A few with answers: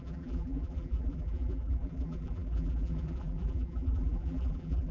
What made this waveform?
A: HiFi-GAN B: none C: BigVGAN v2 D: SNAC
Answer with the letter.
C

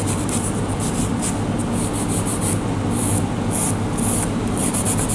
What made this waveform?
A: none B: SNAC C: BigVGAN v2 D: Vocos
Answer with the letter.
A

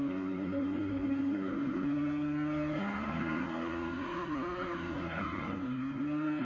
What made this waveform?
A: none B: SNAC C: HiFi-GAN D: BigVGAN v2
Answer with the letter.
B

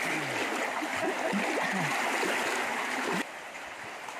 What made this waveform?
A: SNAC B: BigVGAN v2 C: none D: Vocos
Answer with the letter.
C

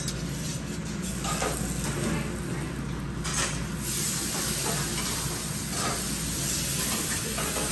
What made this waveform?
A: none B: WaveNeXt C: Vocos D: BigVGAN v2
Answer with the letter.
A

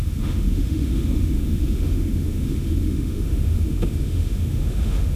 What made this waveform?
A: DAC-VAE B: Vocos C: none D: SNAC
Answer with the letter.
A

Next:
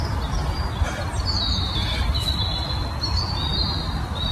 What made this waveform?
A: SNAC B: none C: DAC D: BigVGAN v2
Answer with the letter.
B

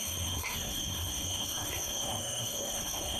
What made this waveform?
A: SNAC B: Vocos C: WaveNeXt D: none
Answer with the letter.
A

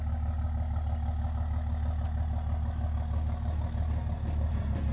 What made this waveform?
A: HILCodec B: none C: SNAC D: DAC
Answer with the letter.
B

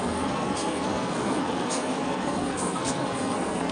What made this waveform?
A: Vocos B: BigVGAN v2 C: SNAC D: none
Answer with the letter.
C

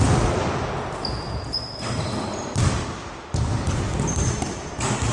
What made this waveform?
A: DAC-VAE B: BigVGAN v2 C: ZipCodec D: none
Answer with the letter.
D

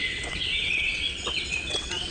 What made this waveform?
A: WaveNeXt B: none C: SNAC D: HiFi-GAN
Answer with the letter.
A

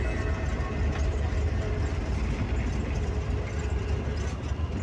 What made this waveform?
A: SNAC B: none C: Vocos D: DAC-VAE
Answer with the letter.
B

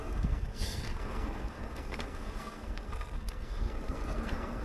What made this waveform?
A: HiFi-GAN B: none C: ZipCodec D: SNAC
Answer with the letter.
D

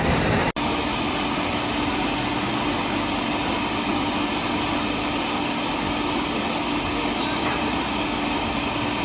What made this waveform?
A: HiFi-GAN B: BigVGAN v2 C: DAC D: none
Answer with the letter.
D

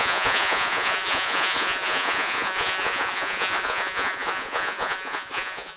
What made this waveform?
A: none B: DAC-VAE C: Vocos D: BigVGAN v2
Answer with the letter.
C